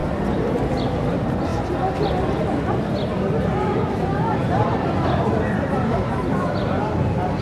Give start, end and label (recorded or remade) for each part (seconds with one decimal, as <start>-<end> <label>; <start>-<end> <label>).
0.0-0.7 remade; 0.7-4.4 recorded; 4.4-7.4 remade